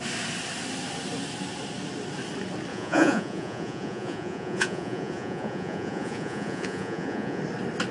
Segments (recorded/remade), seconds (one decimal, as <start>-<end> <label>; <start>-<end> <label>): 0.0-2.7 recorded; 2.7-7.4 remade; 7.4-7.9 recorded